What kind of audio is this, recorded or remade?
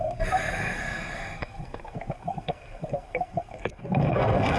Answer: remade